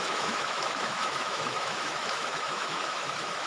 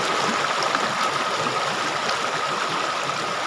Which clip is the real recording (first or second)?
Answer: second